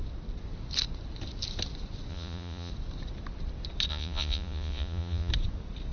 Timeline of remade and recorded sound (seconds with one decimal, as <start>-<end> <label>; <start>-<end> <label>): 0.0-2.1 recorded; 2.1-2.7 remade; 2.7-3.9 recorded; 3.9-5.3 remade; 5.3-5.9 recorded